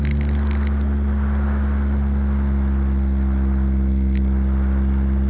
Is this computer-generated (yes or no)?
no